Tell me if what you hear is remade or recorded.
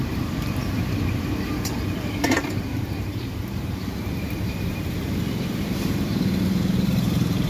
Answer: remade